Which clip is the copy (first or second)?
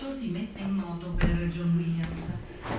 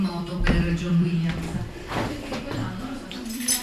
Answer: second